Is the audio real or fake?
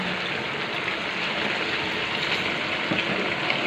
real